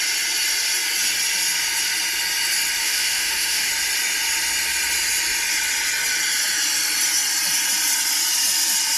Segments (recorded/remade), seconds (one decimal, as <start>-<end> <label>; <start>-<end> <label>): 0.0-2.8 recorded; 2.8-3.7 remade; 3.7-9.0 recorded